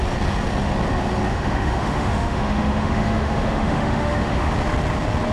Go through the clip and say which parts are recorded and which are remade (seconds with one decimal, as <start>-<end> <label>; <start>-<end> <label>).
0.0-1.3 recorded; 1.3-4.5 remade; 4.5-5.3 recorded